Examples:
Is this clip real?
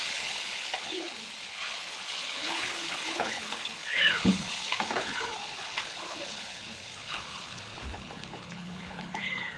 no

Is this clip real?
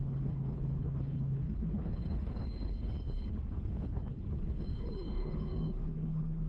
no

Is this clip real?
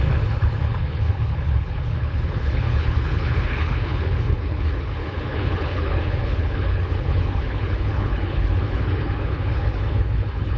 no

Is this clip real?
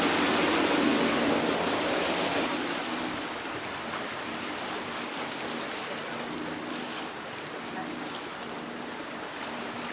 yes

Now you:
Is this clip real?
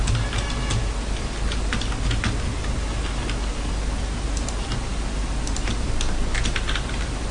yes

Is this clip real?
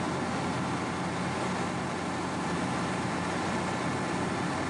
yes